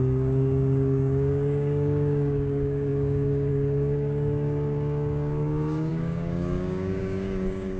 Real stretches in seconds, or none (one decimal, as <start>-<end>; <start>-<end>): none